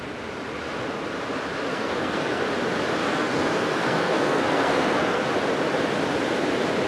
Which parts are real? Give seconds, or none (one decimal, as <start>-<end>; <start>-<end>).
0.0-1.7; 2.4-3.0; 5.3-6.9